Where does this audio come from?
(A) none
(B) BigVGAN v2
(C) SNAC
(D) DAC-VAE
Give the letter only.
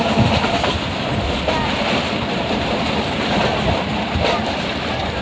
B